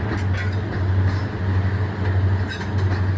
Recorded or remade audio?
recorded